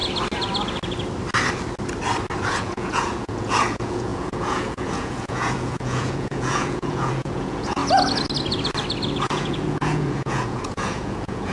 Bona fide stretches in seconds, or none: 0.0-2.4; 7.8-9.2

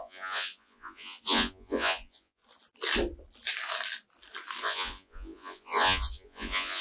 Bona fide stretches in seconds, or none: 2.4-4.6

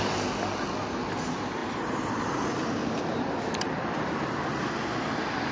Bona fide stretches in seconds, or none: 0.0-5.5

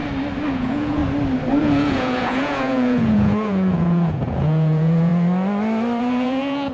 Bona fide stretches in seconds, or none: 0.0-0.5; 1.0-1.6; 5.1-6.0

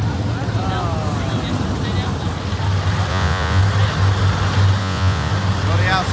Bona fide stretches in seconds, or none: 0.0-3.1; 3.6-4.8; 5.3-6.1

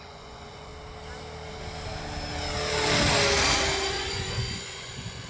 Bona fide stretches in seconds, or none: 0.7-3.9